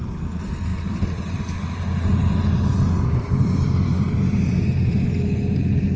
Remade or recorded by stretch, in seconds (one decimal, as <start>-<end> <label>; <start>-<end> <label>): 0.0-0.7 recorded; 0.7-1.4 remade; 1.4-2.1 recorded; 2.1-4.5 remade; 4.5-6.0 recorded